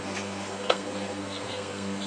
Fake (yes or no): yes